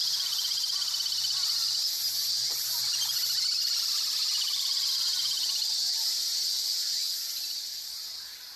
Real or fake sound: real